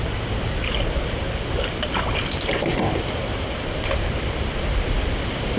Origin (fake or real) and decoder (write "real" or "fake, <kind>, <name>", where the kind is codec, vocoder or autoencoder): real